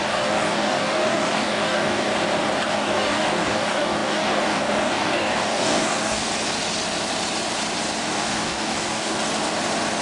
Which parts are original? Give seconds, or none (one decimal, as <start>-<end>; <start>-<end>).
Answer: 2.1-2.7; 6.3-8.0; 9.2-10.0